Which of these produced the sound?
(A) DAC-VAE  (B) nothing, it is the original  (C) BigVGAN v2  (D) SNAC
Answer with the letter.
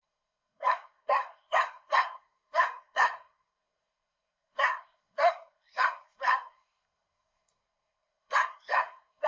D